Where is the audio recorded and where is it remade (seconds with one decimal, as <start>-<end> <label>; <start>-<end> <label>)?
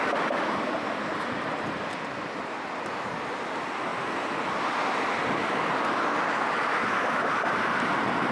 0.0-8.3 recorded